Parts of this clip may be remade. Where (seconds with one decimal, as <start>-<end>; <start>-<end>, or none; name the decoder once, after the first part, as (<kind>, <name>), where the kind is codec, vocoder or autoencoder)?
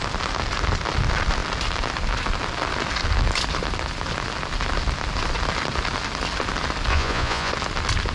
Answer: 6.9-7.5 (vocoder, Vocos)